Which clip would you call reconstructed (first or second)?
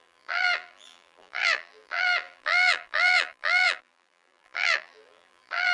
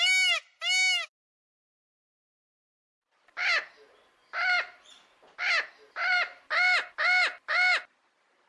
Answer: first